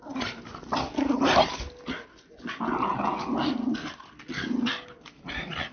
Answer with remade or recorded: recorded